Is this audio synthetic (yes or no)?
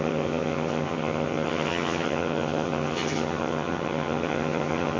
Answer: yes